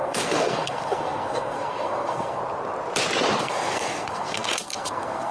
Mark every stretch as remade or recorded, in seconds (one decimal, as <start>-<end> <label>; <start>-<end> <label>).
0.0-2.4 remade; 2.4-3.4 recorded; 3.4-5.3 remade